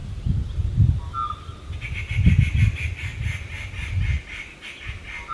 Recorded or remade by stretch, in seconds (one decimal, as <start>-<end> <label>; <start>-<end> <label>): 0.0-5.3 recorded